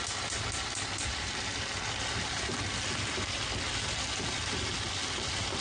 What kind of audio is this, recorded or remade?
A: recorded